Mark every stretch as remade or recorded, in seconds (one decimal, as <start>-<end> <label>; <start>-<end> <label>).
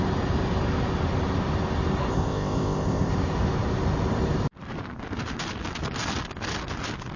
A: 0.0-2.1 recorded; 2.1-3.1 remade; 3.1-7.2 recorded